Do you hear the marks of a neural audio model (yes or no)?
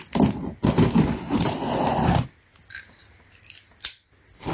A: no